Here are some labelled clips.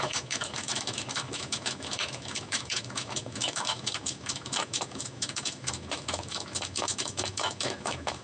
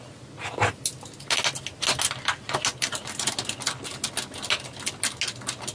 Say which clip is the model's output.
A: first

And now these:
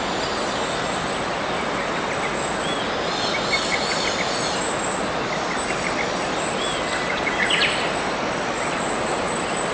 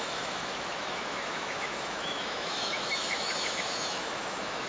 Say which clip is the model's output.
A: second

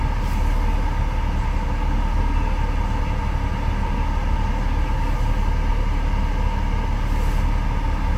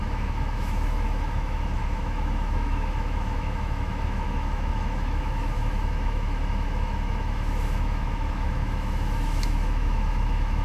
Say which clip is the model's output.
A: second